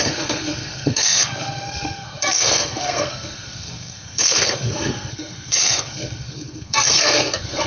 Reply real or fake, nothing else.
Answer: fake